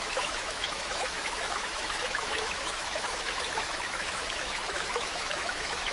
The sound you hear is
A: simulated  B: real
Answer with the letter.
A